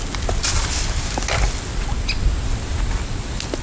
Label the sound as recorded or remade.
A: recorded